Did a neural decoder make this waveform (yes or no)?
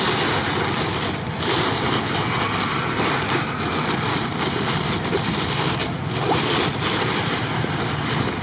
no